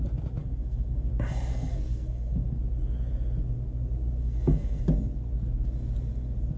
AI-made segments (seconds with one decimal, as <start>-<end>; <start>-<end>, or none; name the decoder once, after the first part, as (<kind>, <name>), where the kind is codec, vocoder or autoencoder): 0.4-1.1 (codec, SNAC); 1.5-2.6; 4.2-4.8